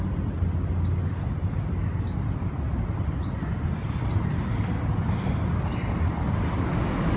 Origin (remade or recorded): recorded